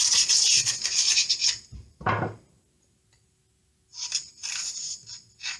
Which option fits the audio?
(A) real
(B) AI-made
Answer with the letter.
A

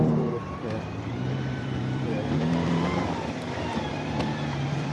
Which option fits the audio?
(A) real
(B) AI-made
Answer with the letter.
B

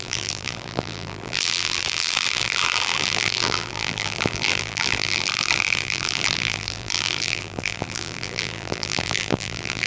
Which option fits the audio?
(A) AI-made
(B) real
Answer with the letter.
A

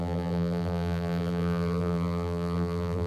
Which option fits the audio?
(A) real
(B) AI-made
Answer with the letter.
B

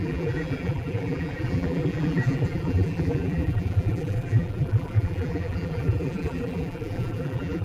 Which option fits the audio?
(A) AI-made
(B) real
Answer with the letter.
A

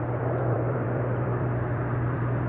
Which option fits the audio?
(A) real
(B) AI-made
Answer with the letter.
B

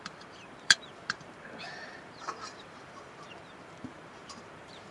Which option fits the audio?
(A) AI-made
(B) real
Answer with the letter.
A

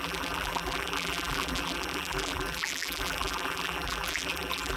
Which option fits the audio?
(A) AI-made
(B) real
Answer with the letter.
A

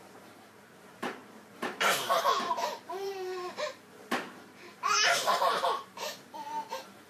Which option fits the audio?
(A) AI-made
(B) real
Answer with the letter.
A